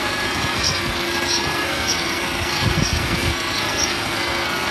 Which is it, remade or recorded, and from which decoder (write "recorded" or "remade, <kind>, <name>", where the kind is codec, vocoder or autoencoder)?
remade, codec, SNAC